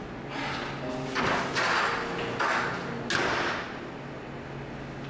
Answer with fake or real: real